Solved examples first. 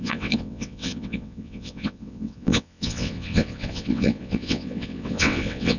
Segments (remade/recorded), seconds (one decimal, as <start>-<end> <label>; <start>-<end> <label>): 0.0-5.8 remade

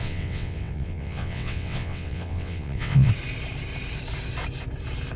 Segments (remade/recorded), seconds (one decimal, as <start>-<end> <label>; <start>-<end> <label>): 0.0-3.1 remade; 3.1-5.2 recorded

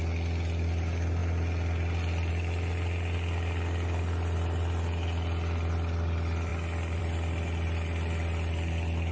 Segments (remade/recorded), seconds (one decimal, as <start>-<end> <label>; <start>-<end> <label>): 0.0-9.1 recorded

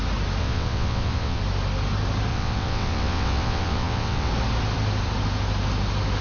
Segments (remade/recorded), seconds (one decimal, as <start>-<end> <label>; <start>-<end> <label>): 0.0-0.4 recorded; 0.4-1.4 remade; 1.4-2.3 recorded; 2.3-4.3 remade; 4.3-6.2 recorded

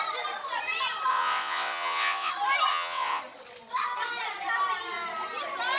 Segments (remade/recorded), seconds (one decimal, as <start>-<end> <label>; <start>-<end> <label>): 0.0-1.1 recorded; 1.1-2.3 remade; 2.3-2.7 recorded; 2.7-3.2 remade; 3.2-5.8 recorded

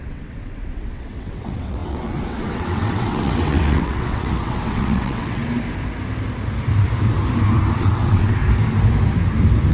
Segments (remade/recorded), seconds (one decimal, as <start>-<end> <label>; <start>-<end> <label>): 0.0-5.4 remade; 5.4-7.8 recorded; 7.8-8.4 remade; 8.4-9.7 recorded

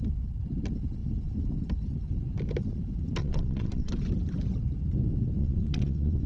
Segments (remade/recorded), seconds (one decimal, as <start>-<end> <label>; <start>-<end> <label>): 0.0-3.2 recorded; 3.2-3.9 remade; 3.9-5.4 recorded; 5.4-6.3 remade